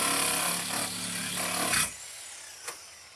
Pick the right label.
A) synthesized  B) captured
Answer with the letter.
B